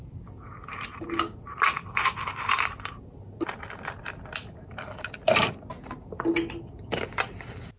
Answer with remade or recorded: recorded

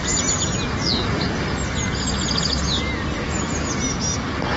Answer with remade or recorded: recorded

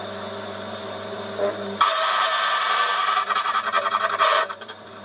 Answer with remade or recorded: remade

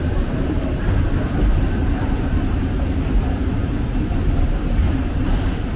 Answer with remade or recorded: remade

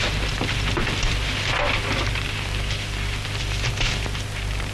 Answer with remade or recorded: recorded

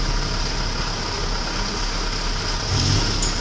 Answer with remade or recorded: recorded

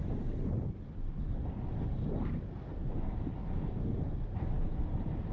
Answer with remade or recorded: recorded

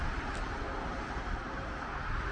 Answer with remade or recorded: remade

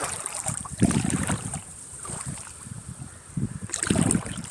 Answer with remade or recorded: remade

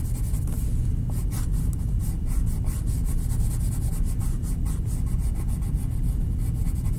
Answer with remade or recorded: recorded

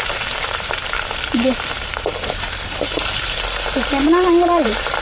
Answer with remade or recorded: remade